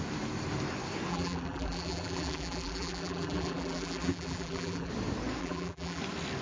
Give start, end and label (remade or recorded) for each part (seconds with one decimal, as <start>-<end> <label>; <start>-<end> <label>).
0.0-1.1 recorded; 1.1-4.9 remade; 4.9-5.4 recorded; 5.4-6.0 remade; 6.0-6.4 recorded